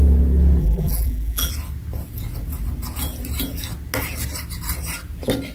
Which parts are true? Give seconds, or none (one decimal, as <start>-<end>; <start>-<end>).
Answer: 0.0-0.6; 1.5-5.5